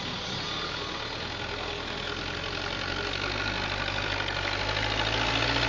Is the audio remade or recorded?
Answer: recorded